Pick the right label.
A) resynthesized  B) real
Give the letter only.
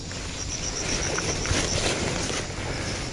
B